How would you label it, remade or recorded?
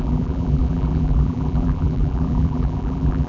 remade